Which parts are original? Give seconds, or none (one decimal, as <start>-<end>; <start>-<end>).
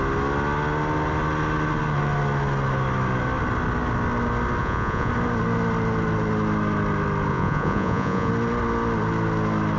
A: 0.0-4.6; 5.1-7.3; 8.3-9.8